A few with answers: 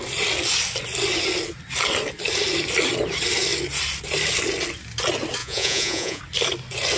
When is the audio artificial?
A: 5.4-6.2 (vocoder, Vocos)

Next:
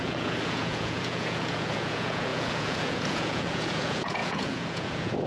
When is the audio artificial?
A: 0.0-5.3 (vocoder, Vocos)

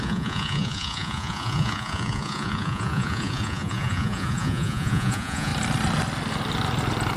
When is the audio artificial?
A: 0.0-5.5 (vocoder, Vocos)

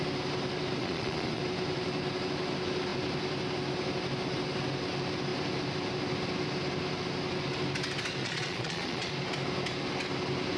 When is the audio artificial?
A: 0.8-1.4 (vocoder, Vocos); 8.2-9.1

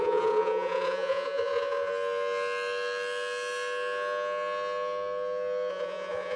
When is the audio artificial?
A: 0.0-1.9 (vocoder, Vocos); 5.7-6.4

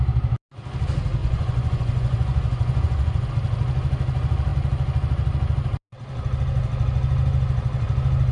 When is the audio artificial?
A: 1.2-3.3 (vocoder, Vocos)

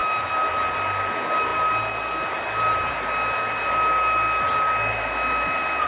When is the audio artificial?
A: none

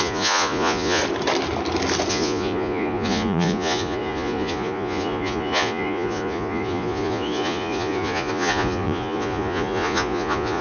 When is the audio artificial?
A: 0.0-1.0 (vocoder, Vocos); 2.1-10.6